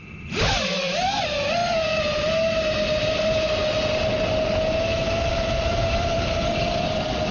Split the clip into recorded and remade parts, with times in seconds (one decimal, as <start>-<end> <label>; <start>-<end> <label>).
0.0-1.6 remade; 1.6-3.2 recorded; 3.2-3.6 remade; 3.6-5.3 recorded; 5.3-7.3 remade